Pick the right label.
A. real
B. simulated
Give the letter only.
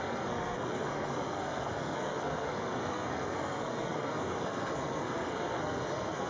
B